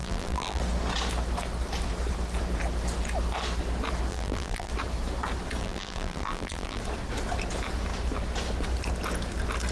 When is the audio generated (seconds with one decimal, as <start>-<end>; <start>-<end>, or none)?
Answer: 0.0-0.6; 4.1-4.7; 5.6-6.8